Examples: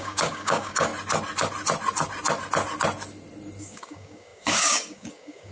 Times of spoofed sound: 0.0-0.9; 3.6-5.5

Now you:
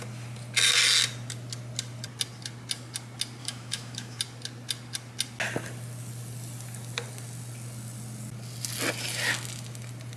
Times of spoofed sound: 3.4-4.2

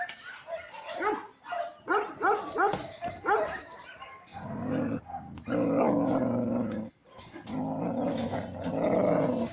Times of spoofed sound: 4.3-5.0; 7.0-7.8